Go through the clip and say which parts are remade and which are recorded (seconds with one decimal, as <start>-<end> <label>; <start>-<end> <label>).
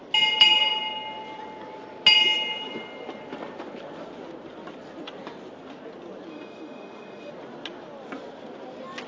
0.0-6.3 recorded; 6.3-7.3 remade; 7.3-9.1 recorded